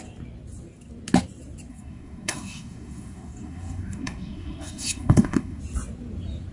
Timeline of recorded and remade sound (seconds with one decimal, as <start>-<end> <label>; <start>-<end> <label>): 0.0-1.7 recorded; 1.7-5.6 remade; 5.6-6.5 recorded